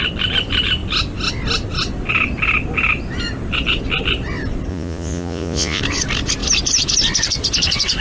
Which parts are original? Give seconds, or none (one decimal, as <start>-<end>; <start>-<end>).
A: 0.0-4.7; 5.8-8.0